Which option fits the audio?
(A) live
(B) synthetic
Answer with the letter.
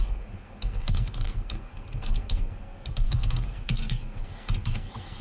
B